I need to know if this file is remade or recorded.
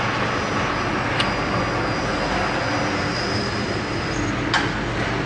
recorded